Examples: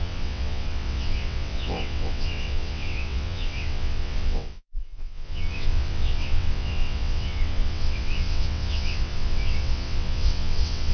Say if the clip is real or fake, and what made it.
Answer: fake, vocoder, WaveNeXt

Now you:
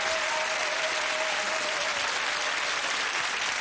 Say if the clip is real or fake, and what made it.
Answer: real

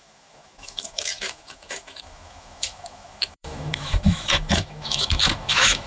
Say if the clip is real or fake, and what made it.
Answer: fake, autoencoder, DAC-VAE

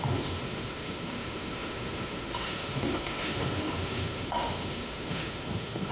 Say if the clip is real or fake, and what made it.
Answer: fake, autoencoder, DAC-VAE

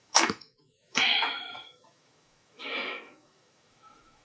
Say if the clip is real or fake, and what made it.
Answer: fake, autoencoder, DAC-VAE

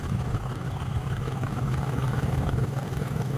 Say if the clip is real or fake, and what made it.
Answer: fake, codec, DAC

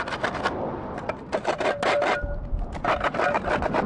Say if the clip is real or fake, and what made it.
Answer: real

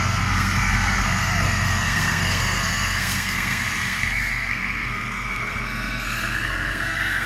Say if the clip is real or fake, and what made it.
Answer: fake, codec, SNAC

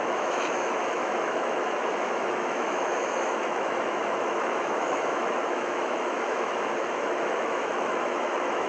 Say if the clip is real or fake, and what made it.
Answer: fake, autoencoder, DAC-VAE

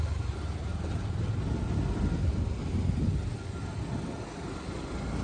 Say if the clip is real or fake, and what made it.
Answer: real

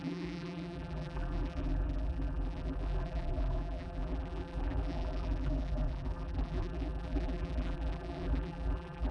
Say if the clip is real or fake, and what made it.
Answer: fake, vocoder, BigVGAN v2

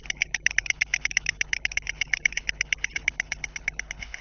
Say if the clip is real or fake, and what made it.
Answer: fake, codec, HILCodec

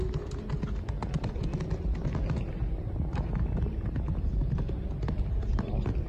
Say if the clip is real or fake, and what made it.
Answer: real